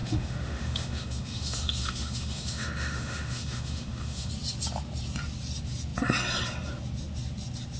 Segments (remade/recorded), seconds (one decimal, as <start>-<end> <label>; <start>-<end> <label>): 0.0-4.3 remade; 4.3-7.8 recorded